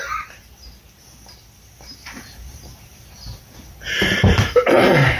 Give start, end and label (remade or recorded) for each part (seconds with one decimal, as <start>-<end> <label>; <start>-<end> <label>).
0.0-1.9 recorded; 1.9-5.2 remade